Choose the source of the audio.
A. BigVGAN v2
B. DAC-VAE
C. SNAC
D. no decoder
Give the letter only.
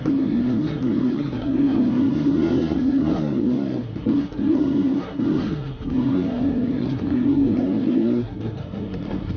C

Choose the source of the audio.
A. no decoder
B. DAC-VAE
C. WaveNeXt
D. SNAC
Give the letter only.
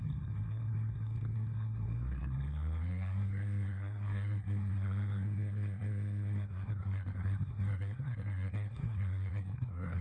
D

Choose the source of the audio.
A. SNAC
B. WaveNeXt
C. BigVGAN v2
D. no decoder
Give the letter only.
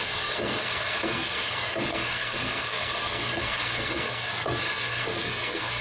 A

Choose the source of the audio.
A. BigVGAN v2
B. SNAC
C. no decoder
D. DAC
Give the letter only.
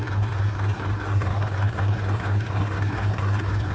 B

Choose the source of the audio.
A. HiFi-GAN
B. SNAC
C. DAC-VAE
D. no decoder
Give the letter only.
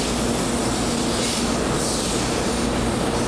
D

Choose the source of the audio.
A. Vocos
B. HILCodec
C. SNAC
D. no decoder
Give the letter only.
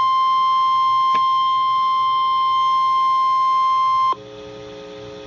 D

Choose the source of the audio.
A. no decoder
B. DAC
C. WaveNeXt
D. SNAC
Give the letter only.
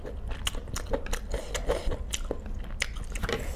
A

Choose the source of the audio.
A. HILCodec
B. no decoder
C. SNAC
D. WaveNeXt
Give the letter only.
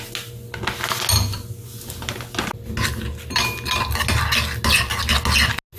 B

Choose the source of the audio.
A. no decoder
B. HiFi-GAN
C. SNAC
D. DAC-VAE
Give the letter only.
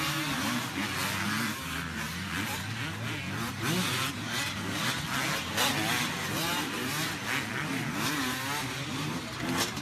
A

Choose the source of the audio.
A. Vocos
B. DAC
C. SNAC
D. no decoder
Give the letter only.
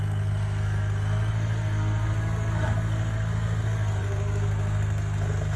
C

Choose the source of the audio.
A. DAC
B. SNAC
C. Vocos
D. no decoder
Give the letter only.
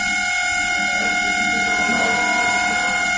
D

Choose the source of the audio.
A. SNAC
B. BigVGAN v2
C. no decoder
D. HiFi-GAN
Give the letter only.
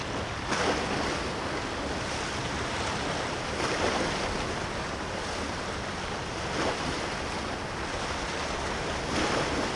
C